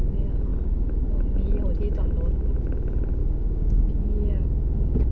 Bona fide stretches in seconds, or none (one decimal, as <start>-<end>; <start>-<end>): 0.0-3.2; 3.8-5.1